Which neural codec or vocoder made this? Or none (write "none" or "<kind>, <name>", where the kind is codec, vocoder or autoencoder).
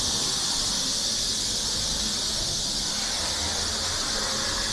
none